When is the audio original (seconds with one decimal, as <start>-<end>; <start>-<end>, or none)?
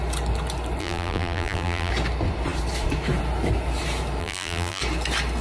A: 0.0-0.8; 1.9-4.2; 4.8-5.4